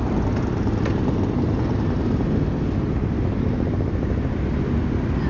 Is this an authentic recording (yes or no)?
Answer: yes